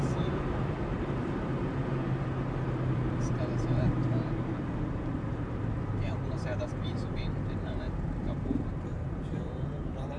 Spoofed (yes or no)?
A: yes